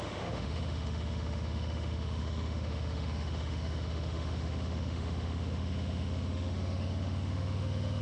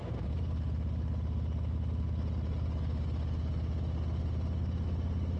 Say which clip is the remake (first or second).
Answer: first